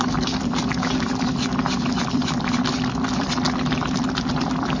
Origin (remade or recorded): remade